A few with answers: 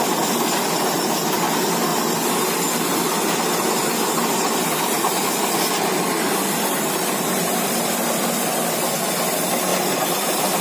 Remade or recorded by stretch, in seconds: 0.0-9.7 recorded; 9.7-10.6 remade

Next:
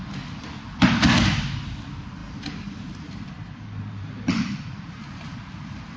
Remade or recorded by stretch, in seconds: 0.0-2.2 recorded; 2.2-6.0 remade

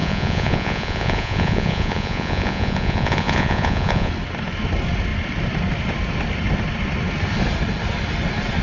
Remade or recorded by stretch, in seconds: 0.0-4.1 remade; 4.1-8.6 recorded